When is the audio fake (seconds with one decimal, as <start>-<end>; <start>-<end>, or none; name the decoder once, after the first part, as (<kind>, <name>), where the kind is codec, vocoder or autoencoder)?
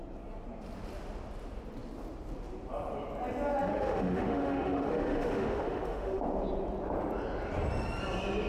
3.7-6.2 (autoencoder, DAC-VAE)